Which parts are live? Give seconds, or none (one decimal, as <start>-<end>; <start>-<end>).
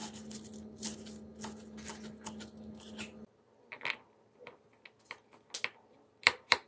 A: 0.0-6.7